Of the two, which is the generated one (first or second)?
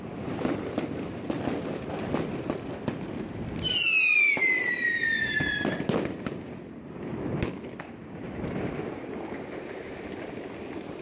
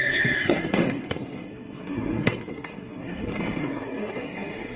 second